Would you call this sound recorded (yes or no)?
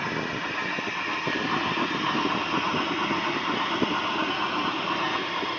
yes